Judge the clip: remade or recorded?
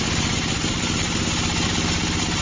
remade